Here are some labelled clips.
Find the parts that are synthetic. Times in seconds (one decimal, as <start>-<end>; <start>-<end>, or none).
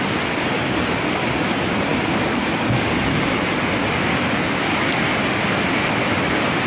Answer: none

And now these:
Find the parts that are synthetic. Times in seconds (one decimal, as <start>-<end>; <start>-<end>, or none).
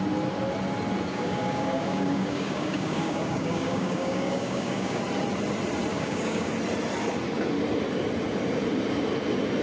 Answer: 1.1-5.0; 5.9-6.5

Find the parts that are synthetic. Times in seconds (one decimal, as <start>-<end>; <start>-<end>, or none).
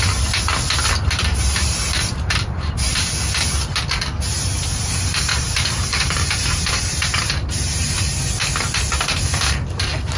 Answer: 1.3-3.1; 5.3-8.2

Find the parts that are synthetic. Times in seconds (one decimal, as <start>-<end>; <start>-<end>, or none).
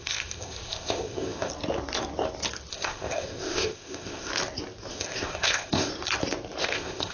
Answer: 0.0-1.5; 2.7-4.3; 4.9-5.9; 6.6-7.1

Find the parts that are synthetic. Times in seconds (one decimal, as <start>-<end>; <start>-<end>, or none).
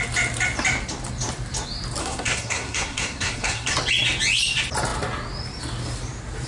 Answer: 2.0-3.7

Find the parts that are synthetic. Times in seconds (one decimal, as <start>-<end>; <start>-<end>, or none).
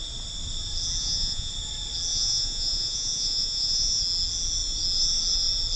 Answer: 1.0-1.5; 2.1-4.0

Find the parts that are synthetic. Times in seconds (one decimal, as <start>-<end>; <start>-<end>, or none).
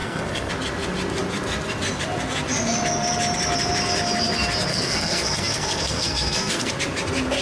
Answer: 0.0-0.5; 4.7-6.7